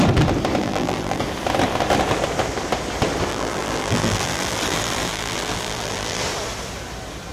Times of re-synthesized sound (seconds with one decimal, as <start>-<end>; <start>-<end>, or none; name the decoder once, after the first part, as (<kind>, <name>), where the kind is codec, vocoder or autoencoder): 0.6-1.2 (vocoder, BigVGAN v2); 3.3-6.2